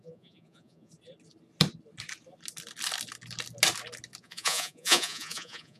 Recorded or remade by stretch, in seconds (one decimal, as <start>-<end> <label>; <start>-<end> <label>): 0.0-0.9 remade; 0.9-4.2 recorded; 4.2-5.8 remade